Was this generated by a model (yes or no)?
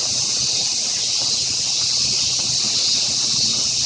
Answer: no